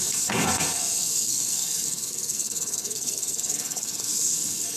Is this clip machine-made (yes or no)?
yes